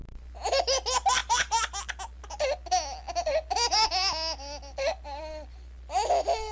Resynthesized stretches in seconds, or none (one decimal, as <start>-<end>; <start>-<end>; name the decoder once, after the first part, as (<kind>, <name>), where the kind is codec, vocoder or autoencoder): none